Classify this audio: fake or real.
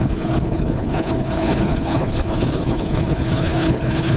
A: fake